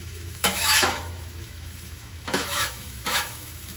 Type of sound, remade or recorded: remade